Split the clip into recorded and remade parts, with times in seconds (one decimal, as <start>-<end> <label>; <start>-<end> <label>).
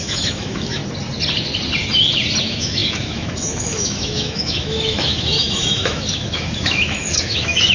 0.0-0.8 remade; 0.8-2.4 recorded; 2.4-7.7 remade